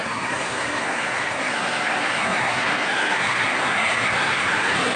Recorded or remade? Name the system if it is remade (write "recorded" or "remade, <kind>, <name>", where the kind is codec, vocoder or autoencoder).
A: remade, codec, SNAC